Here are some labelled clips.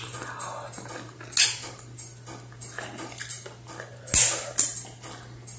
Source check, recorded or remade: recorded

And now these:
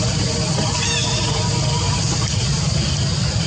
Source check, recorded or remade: recorded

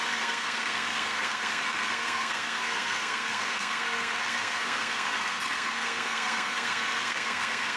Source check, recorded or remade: remade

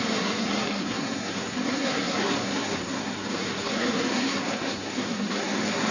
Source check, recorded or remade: remade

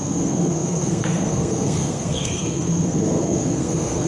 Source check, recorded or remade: remade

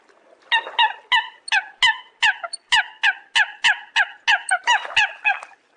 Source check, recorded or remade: recorded